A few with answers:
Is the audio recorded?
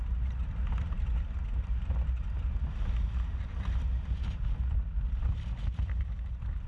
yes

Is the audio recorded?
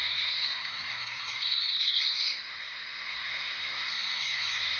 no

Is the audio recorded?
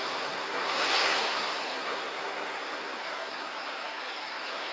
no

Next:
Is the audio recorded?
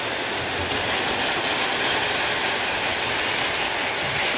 yes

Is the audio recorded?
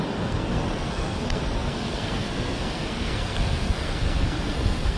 no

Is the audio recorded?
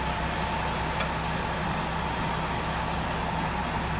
yes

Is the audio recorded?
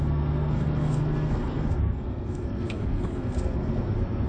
no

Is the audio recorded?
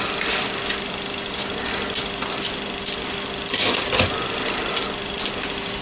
yes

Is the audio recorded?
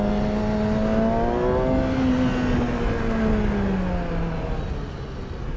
yes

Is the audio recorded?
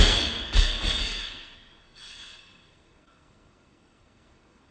no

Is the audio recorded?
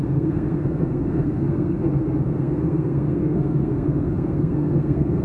no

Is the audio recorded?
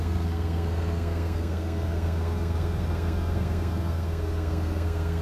no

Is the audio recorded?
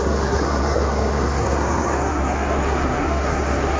no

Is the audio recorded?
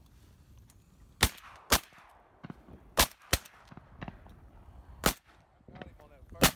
yes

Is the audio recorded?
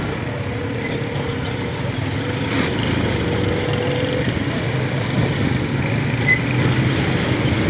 yes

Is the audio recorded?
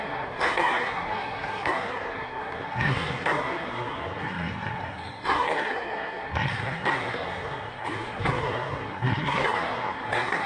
no